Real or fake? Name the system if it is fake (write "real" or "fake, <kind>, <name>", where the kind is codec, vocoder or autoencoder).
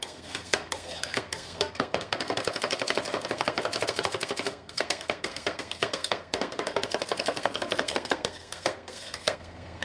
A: fake, codec, SNAC